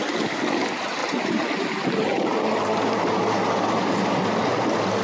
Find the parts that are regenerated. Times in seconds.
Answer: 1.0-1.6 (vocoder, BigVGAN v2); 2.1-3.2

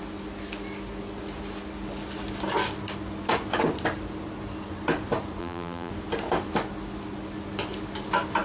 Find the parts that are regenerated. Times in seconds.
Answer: 5.4-5.9 (vocoder, BigVGAN v2)

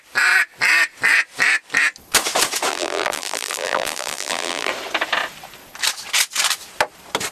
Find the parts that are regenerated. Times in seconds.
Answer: 2.7-4.7 (vocoder, BigVGAN v2)